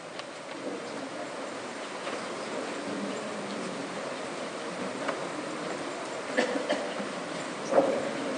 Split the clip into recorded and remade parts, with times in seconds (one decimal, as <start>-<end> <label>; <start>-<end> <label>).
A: 0.0-3.8 recorded; 3.8-7.8 remade; 7.8-8.4 recorded